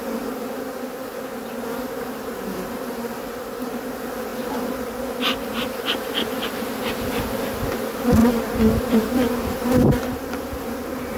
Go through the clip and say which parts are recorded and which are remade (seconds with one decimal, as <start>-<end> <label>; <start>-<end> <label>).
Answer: 0.0-8.2 recorded; 8.2-10.7 remade; 10.7-11.2 recorded